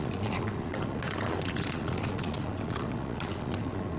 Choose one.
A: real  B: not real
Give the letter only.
B